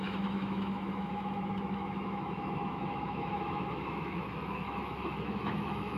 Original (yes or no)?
no